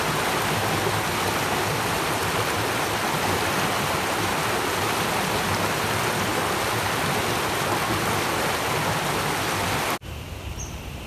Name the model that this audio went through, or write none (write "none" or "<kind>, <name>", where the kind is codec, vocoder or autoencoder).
none